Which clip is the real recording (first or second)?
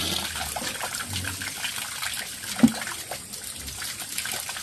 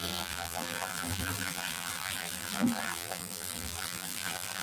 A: first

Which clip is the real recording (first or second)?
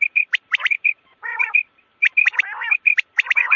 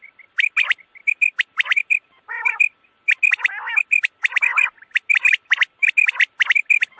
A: second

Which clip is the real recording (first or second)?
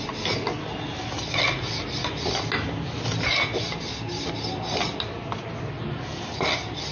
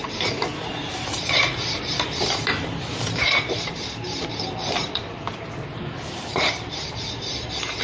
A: first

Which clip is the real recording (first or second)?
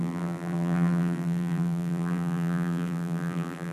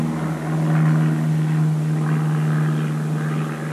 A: second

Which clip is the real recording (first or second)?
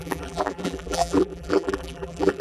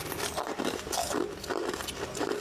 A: second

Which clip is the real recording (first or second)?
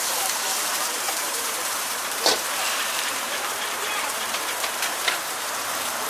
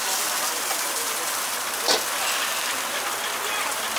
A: second